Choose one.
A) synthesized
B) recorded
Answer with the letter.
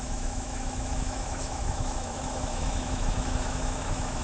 A